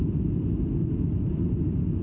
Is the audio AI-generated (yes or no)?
no